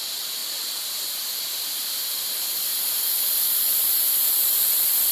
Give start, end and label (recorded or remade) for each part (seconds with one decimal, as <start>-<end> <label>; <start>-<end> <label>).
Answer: 0.0-5.1 remade